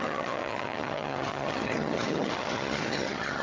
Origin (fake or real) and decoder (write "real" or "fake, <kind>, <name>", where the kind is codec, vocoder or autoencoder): fake, vocoder, HiFi-GAN